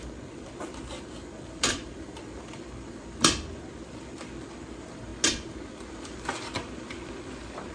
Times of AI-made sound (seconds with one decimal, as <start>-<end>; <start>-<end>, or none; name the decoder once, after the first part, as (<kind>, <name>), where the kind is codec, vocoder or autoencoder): 0.0-5.1 (vocoder, BigVGAN v2); 5.9-7.7